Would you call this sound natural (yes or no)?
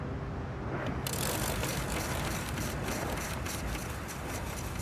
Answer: yes